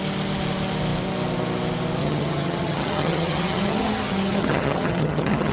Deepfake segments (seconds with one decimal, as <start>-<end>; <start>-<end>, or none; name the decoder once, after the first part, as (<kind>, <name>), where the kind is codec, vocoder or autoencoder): 2.0-5.5 (vocoder, HiFi-GAN)